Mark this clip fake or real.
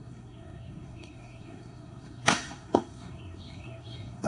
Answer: fake